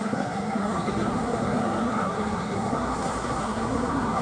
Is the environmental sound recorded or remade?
remade